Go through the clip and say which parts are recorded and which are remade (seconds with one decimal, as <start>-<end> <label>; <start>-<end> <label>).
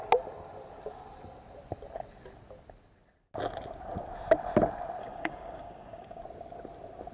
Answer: 0.0-5.0 recorded; 5.0-6.2 remade; 6.2-7.1 recorded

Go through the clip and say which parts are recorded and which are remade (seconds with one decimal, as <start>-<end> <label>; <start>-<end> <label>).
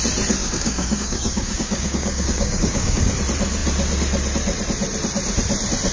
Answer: 0.0-0.4 recorded; 0.4-3.1 remade; 3.1-5.9 recorded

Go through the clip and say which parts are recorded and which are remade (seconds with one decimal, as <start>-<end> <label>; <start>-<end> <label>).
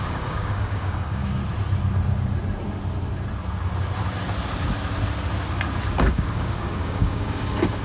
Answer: 0.0-1.4 remade; 1.4-6.1 recorded; 6.1-7.8 remade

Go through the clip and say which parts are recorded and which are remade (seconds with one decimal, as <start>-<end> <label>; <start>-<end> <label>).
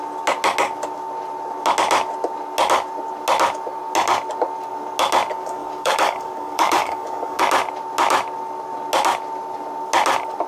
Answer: 0.0-5.3 recorded; 5.3-7.4 remade; 7.4-10.5 recorded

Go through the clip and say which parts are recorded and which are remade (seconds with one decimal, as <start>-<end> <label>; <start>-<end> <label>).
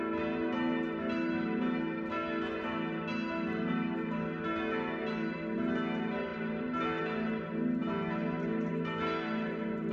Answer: 0.0-9.9 recorded